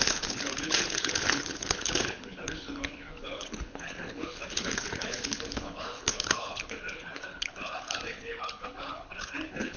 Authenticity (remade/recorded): remade